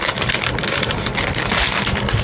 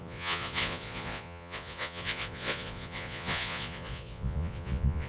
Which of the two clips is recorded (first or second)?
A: first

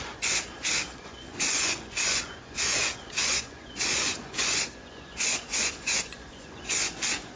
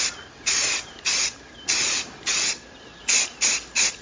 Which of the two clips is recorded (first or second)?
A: second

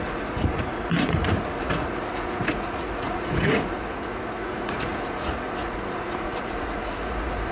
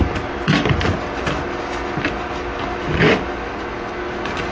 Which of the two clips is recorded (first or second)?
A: second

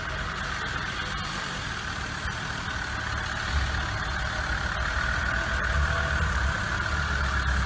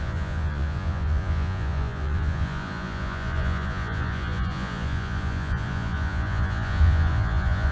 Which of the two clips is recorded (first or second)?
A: first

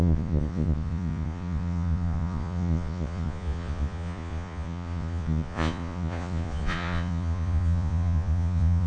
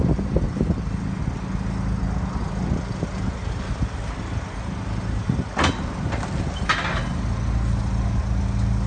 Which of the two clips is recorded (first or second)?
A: second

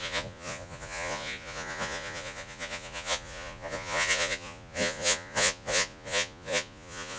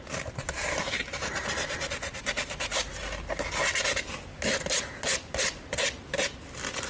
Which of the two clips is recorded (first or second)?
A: second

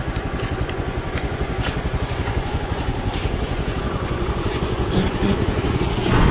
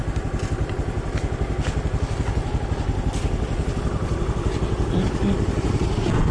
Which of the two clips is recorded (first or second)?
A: second